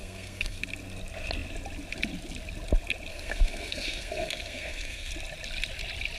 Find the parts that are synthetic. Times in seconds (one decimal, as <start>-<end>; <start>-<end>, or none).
0.0-0.6; 3.1-5.1